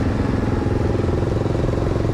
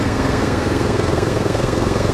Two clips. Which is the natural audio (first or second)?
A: first